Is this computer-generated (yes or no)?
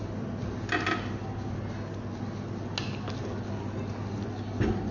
no